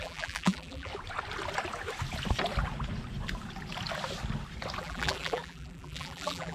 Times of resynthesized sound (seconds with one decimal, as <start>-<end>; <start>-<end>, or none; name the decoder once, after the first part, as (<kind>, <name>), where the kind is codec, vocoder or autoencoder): 0.0-0.9 (vocoder, BigVGAN v2); 4.8-6.5